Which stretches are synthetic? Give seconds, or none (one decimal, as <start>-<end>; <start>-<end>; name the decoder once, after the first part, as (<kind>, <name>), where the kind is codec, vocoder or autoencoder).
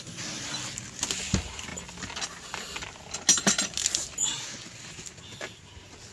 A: none